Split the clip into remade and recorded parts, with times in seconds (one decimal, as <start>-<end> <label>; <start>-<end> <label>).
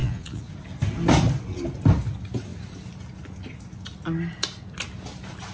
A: 0.0-0.5 remade; 0.5-5.5 recorded